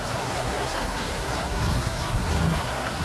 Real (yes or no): no